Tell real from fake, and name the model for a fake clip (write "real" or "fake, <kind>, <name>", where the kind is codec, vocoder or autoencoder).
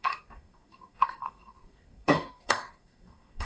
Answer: fake, codec, SNAC